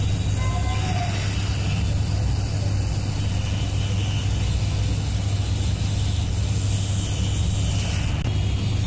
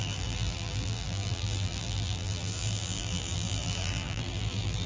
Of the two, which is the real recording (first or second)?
first